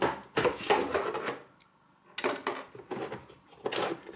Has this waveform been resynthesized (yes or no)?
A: no